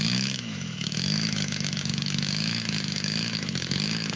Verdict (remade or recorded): remade